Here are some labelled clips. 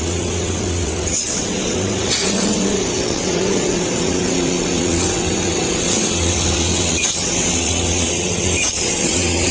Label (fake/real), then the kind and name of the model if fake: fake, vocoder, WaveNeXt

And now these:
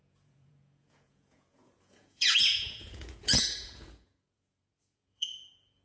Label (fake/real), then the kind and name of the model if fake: fake, vocoder, Vocos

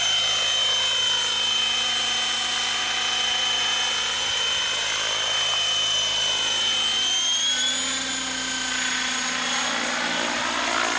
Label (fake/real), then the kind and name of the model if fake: real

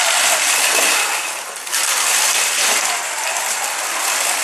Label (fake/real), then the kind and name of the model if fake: real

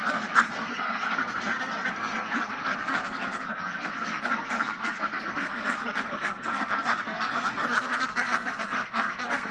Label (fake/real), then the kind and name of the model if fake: fake, codec, SNAC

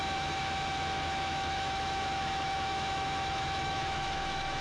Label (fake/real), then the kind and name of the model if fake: fake, autoencoder, DAC-VAE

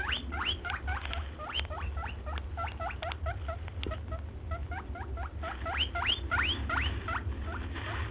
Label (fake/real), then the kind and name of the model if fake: real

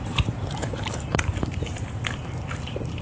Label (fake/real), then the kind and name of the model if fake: fake, vocoder, BigVGAN v2